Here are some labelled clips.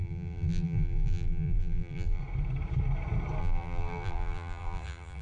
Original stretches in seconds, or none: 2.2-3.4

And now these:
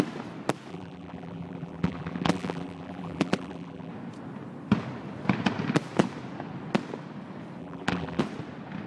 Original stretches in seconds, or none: 0.0-0.7; 3.9-7.6; 8.2-8.9

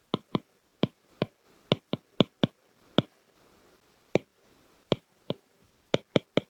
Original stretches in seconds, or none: 0.0-0.7; 1.2-4.3; 5.5-6.5

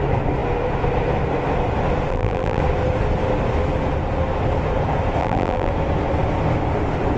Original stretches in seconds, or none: 0.0-2.1; 2.6-5.2; 5.7-7.2

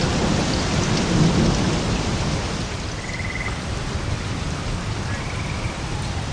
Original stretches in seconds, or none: 0.0-3.8

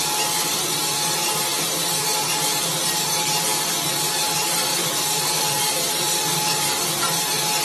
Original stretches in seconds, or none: 0.0-4.7; 5.8-7.6

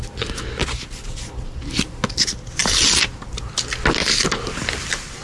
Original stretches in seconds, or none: 0.0-5.2